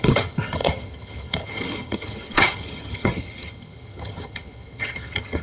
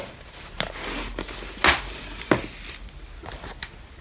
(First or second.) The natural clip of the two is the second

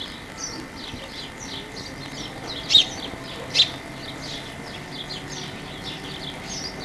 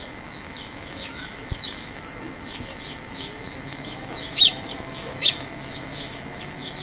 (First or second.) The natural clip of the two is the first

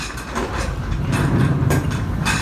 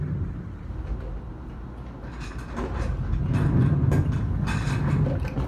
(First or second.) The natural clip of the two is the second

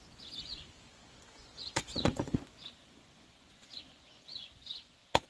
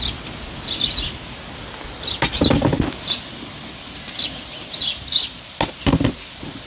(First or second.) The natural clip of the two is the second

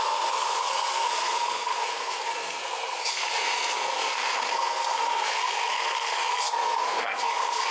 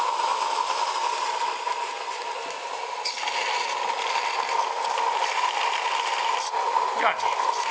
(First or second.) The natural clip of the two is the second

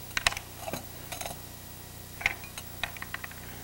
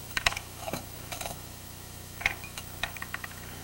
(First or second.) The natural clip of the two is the first